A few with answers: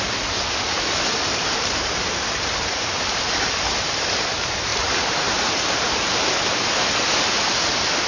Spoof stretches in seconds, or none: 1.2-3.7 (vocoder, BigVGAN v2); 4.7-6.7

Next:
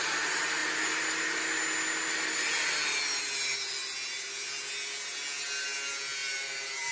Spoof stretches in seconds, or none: 6.2-6.9 (vocoder, BigVGAN v2)

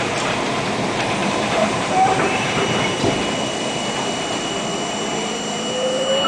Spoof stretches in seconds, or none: 1.2-3.1 (vocoder, BigVGAN v2); 4.7-6.3

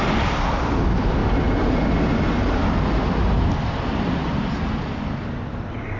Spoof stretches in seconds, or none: none

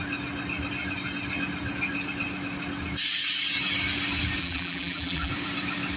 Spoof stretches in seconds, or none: 4.4-5.3 (vocoder, BigVGAN v2)

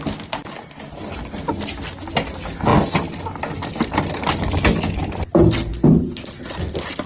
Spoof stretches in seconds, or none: 5.7-6.2 (vocoder, BigVGAN v2)

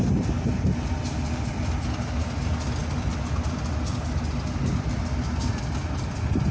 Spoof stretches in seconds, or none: none

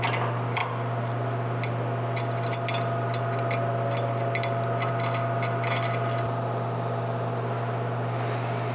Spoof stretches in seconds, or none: none